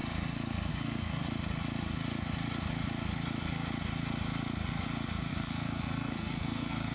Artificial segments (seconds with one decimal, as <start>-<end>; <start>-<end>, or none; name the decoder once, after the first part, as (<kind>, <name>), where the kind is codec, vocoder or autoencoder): 0.7-1.2 (codec, SNAC); 5.3-6.9